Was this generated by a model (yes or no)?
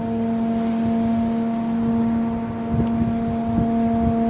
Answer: no